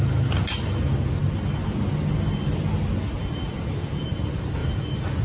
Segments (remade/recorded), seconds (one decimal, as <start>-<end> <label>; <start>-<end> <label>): 0.0-5.2 recorded